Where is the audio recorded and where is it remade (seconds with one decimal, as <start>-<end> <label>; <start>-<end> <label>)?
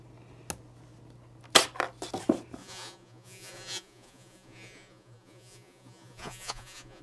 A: 0.0-2.6 recorded; 2.6-7.0 remade